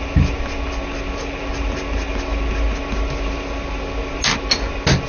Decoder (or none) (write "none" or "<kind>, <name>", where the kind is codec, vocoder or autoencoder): none